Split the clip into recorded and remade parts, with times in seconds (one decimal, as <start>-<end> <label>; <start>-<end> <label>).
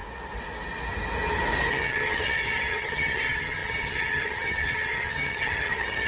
0.0-1.7 recorded; 1.7-6.1 remade